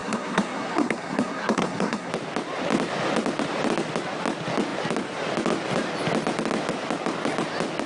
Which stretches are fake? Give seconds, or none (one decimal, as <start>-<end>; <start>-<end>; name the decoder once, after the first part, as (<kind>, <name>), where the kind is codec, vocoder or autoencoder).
0.0-2.1 (codec, SNAC)